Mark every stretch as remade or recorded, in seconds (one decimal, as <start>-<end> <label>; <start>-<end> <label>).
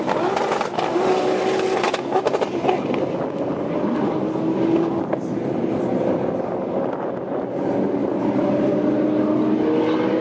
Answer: 0.0-8.0 recorded; 8.0-8.7 remade; 8.7-10.2 recorded